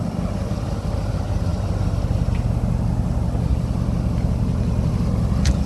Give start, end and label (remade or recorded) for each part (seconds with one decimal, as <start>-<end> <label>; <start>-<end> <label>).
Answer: 0.0-5.7 recorded